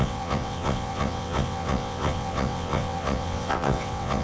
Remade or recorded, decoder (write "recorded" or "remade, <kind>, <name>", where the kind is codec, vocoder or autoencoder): remade, vocoder, WaveNeXt